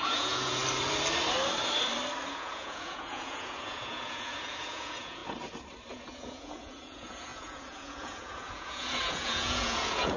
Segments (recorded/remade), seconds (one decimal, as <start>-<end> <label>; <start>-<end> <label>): 0.0-0.6 remade; 0.6-2.3 recorded; 2.3-5.2 remade; 5.2-5.9 recorded; 5.9-10.2 remade